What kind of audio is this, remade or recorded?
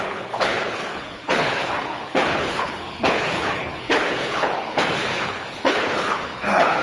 remade